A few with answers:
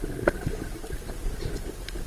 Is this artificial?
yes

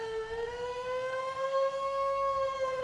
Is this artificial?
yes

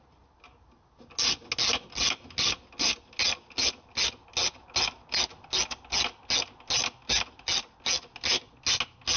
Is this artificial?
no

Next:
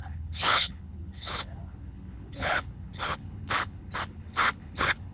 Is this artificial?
yes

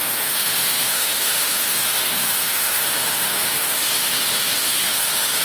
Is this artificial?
yes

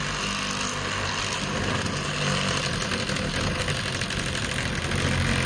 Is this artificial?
no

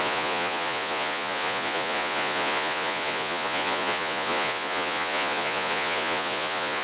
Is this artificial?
yes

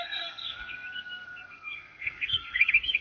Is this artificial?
yes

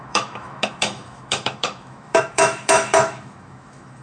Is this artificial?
yes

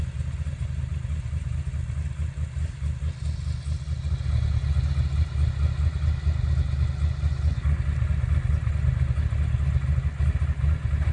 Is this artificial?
no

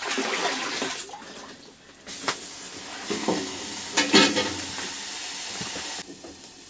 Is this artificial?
no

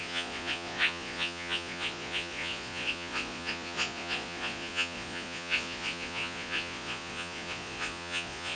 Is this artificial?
yes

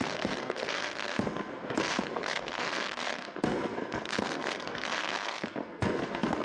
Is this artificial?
yes